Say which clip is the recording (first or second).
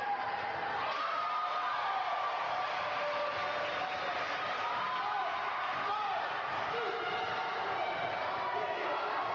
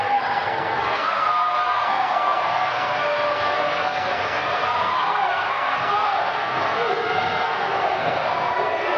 first